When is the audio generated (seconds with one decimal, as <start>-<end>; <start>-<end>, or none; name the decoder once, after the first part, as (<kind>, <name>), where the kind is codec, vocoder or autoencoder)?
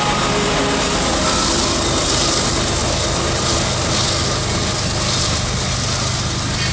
none